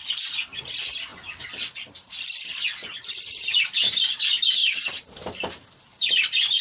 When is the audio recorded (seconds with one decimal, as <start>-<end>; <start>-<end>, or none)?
0.0-0.6

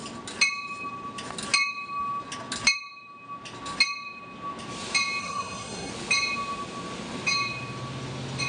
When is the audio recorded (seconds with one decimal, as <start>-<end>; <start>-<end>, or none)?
0.0-5.2; 5.9-8.5

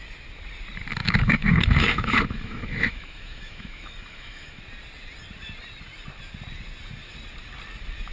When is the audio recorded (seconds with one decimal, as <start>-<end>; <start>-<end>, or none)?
0.0-1.0; 4.6-8.1

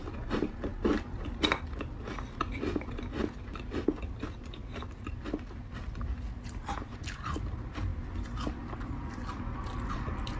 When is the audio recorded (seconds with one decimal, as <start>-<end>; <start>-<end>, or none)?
0.0-10.4

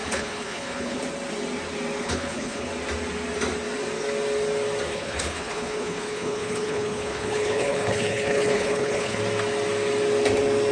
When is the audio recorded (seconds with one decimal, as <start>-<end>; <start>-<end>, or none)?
1.0-2.0; 2.7-4.9; 9.2-10.7

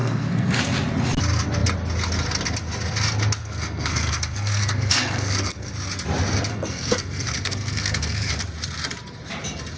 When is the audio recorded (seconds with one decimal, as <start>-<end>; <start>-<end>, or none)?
0.6-3.4; 5.7-6.5; 8.3-9.8

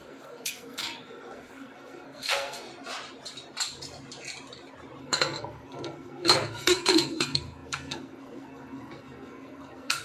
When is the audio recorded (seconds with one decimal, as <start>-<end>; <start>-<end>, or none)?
2.7-5.0

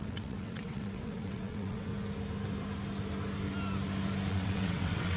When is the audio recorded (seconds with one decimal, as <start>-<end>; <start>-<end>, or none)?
1.9-4.3